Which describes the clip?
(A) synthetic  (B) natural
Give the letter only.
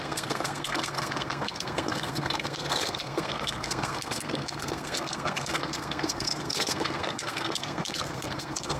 A